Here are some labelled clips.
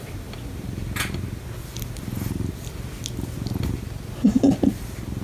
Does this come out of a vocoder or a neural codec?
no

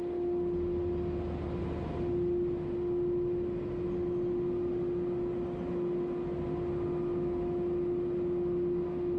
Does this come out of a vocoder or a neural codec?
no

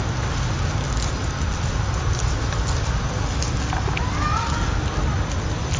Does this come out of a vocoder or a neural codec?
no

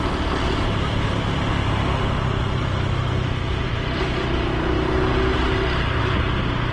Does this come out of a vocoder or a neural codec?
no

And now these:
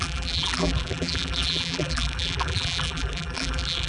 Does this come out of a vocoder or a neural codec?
yes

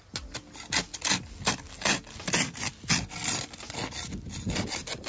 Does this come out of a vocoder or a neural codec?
no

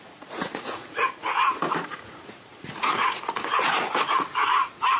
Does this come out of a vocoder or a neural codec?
yes